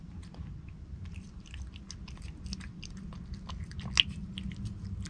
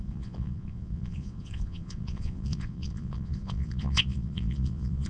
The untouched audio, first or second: first